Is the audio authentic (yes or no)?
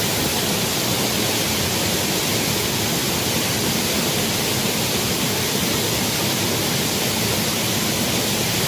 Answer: yes